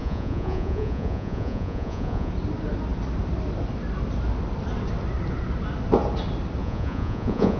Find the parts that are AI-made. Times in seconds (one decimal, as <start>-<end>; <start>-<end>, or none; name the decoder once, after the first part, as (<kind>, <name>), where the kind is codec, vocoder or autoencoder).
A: 0.0-2.3 (vocoder, Vocos); 6.6-7.6